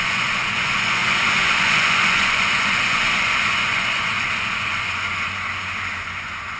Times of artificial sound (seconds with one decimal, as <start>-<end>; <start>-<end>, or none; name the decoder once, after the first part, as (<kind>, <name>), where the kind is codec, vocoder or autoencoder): 0.0-6.6 (vocoder, Vocos)